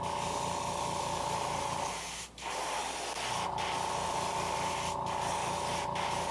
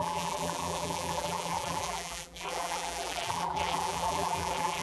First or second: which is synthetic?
second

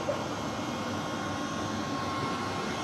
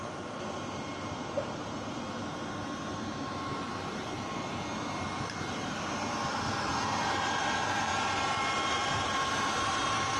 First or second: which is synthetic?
second